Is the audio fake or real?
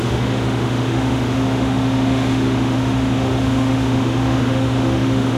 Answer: fake